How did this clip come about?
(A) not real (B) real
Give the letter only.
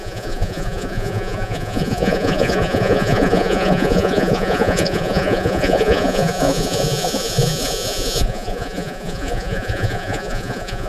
A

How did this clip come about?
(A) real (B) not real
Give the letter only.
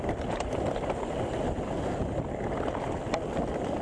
A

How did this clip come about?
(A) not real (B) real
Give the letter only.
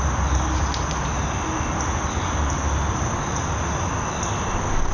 B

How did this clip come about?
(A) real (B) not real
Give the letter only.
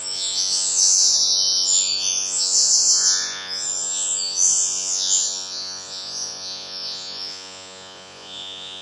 B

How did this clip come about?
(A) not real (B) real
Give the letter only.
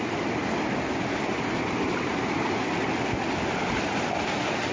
B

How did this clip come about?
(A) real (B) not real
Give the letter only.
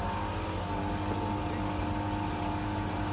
A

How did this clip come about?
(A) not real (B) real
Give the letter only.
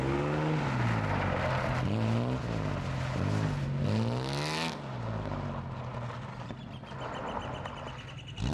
B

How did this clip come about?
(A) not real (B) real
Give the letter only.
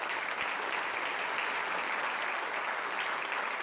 B